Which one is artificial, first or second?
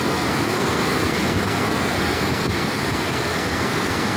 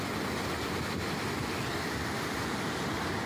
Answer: first